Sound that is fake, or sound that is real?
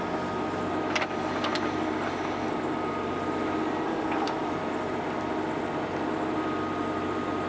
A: real